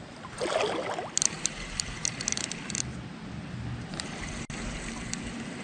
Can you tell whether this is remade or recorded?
recorded